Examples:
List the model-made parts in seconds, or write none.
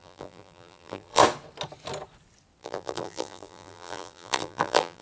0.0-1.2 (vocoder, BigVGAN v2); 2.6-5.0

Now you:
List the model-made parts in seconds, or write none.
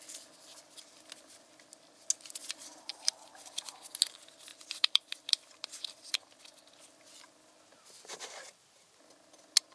2.4-3.6 (vocoder, BigVGAN v2); 4.5-6.4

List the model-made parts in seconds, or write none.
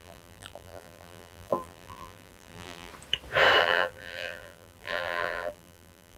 0.0-2.9 (vocoder, BigVGAN v2); 3.6-6.2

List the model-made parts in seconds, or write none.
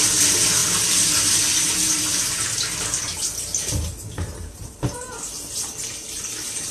none